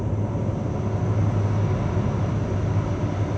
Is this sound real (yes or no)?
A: yes